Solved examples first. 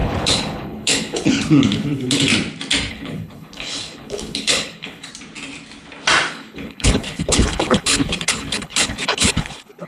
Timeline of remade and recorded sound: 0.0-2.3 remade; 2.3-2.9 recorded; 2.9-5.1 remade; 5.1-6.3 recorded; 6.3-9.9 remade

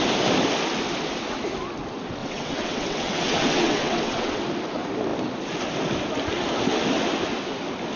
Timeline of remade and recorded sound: 0.0-2.2 recorded; 2.2-4.4 remade; 4.4-8.0 recorded

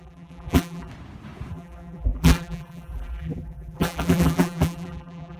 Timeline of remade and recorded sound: 0.0-0.9 remade; 0.9-1.5 recorded; 1.5-5.4 remade

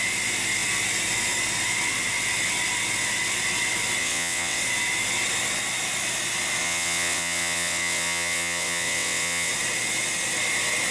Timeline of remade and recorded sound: 0.0-4.0 recorded; 4.0-4.6 remade; 4.6-6.6 recorded; 6.6-9.5 remade; 9.5-10.9 recorded

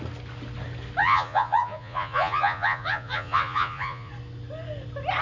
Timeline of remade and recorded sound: 0.0-1.0 recorded; 1.0-4.1 remade; 4.1-5.2 recorded